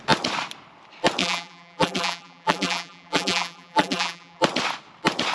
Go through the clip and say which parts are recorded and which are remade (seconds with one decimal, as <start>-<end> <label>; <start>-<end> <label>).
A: 0.0-1.2 recorded; 1.2-4.4 remade; 4.4-5.3 recorded

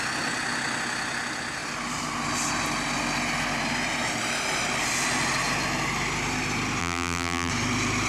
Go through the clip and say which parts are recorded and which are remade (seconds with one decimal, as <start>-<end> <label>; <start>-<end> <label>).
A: 0.0-6.8 recorded; 6.8-7.5 remade; 7.5-8.1 recorded

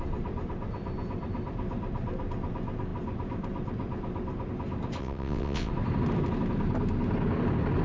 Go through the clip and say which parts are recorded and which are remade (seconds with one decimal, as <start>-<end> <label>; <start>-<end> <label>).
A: 0.0-5.0 recorded; 5.0-5.7 remade; 5.7-7.8 recorded

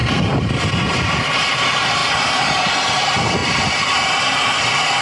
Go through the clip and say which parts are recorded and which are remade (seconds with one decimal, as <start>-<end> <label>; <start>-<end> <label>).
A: 0.0-0.5 remade; 0.5-2.0 recorded; 2.0-2.7 remade; 2.7-5.0 recorded

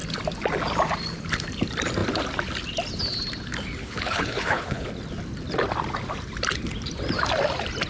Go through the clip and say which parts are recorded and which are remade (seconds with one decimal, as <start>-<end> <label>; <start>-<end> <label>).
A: 0.0-3.8 recorded; 3.8-4.9 remade; 4.9-7.9 recorded